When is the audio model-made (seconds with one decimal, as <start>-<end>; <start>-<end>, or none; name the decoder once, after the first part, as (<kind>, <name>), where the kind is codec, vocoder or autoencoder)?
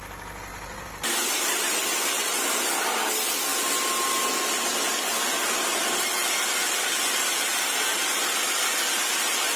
none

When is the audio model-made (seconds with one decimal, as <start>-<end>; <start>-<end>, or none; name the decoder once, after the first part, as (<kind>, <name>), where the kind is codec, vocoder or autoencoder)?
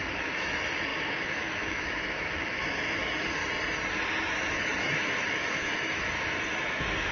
0.0-3.4 (autoencoder, DAC-VAE); 4.5-7.1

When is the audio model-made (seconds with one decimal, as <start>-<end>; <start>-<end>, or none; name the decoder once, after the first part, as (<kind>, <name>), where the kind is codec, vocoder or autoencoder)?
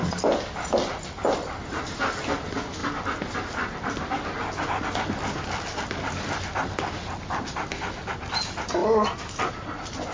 none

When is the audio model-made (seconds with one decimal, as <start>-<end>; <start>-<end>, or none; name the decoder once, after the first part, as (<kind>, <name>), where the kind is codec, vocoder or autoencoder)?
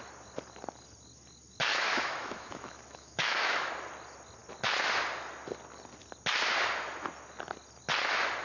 1.7-3.7 (autoencoder, DAC-VAE)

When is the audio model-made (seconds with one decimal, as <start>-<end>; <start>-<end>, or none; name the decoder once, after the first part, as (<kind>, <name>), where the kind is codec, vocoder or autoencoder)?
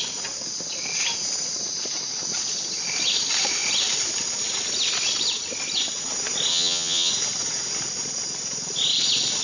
6.5-7.1 (vocoder, HiFi-GAN)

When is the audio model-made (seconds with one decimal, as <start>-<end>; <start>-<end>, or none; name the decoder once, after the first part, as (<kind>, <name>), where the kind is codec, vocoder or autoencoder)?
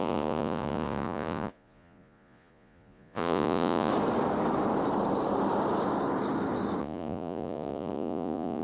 0.0-3.9 (vocoder, Vocos); 6.8-8.6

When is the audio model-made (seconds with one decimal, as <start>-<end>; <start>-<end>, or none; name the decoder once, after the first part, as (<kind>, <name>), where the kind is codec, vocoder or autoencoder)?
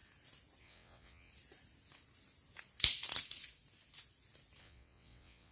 0.6-1.3 (vocoder, WaveNeXt); 4.6-5.5